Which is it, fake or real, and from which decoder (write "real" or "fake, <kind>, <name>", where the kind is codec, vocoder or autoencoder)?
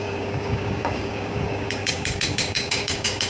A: fake, codec, DAC